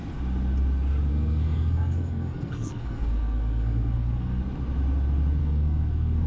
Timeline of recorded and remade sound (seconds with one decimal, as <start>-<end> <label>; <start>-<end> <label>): 0.0-1.1 recorded; 1.1-4.4 remade; 4.4-5.4 recorded; 5.4-6.3 remade